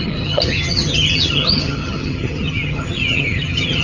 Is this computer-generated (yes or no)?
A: yes